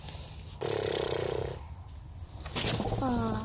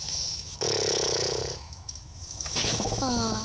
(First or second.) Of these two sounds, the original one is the first